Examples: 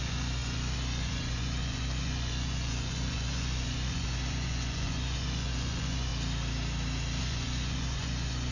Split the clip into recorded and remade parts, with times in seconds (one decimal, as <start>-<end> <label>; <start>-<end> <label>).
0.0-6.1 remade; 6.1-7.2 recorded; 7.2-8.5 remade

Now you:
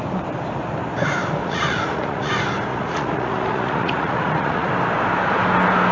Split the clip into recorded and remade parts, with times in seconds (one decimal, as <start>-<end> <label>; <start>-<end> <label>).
0.0-1.4 recorded; 1.4-2.3 remade; 2.3-2.7 recorded; 2.7-4.7 remade; 4.7-5.9 recorded

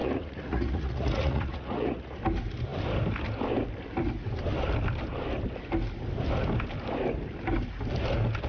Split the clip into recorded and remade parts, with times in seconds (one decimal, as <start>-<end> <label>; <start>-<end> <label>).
0.0-2.2 remade; 2.2-8.5 recorded

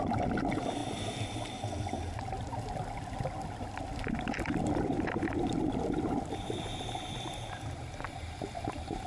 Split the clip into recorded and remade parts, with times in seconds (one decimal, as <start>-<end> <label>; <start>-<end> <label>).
0.0-9.1 recorded

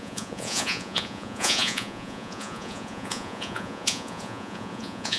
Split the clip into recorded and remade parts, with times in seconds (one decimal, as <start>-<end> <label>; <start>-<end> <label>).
0.0-5.2 remade

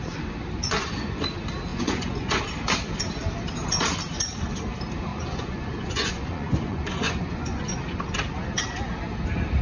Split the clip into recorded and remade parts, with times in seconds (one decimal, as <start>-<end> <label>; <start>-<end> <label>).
0.0-0.6 recorded; 0.6-1.2 remade; 1.2-1.7 recorded; 1.7-2.4 remade; 2.4-5.1 recorded; 5.1-7.8 remade; 7.8-9.6 recorded